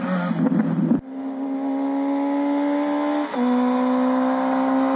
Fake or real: real